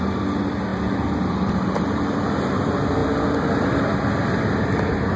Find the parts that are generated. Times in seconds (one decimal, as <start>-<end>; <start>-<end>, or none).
0.7-2.4